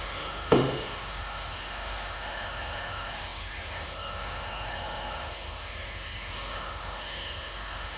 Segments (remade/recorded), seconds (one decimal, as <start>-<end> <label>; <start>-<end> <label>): 0.0-8.0 remade